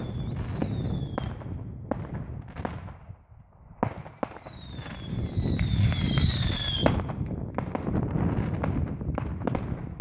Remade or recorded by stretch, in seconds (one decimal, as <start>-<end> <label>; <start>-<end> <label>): 0.0-10.0 recorded